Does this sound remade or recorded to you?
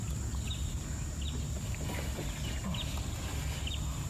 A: recorded